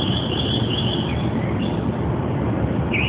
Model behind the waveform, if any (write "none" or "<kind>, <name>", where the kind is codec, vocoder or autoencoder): none